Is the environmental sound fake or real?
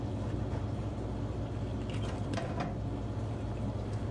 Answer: real